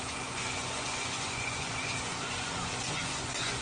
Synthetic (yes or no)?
yes